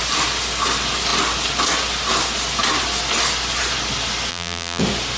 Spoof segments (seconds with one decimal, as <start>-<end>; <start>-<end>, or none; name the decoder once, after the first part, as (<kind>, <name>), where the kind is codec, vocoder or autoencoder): 4.3-4.8 (vocoder, BigVGAN v2)